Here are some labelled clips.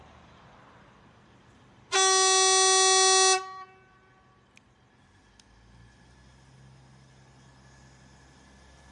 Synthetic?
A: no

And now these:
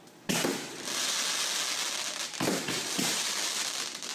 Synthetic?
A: no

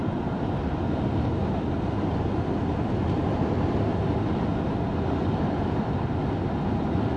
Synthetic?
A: no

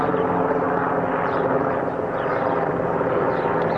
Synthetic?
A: no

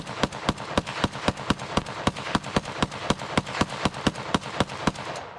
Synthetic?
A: yes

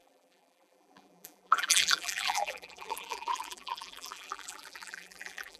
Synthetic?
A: yes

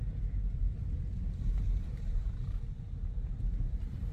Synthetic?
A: yes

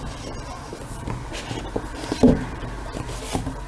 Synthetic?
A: yes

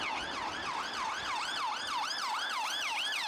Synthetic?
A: yes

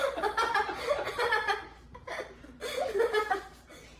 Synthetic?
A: yes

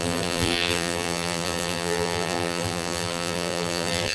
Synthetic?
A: yes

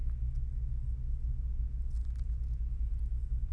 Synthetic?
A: no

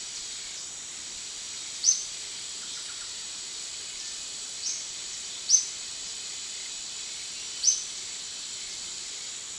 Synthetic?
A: yes